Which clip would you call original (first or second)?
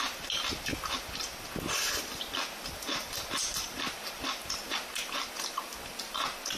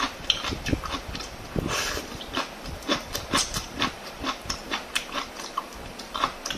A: first